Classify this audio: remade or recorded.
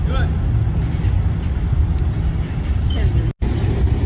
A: recorded